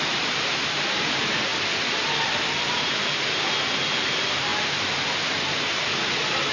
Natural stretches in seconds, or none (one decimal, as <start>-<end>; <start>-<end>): 1.5-4.0; 4.5-6.1